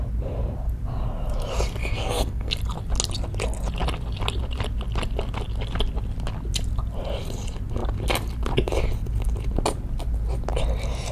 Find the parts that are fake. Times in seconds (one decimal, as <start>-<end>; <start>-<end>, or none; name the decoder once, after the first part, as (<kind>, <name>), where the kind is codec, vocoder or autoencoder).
1.8-2.5 (codec, SNAC)